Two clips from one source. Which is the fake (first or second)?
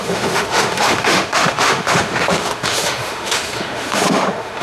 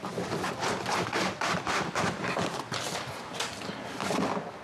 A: first